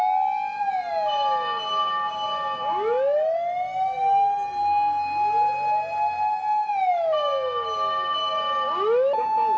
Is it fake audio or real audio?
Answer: real